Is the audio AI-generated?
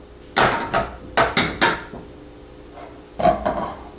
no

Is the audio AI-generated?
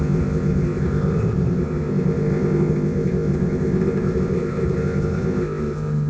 yes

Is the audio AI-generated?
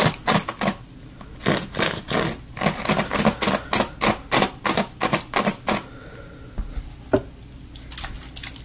no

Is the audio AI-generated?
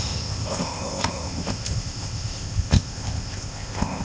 yes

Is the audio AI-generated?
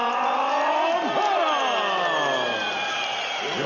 no